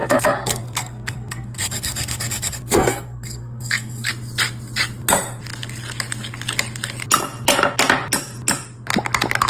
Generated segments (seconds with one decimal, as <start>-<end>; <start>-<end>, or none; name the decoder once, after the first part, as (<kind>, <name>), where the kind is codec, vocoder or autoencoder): 0.0-4.1 (codec, SNAC)